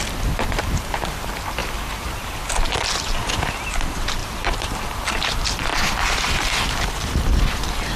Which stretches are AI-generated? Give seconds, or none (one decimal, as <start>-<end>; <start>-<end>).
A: 4.2-4.8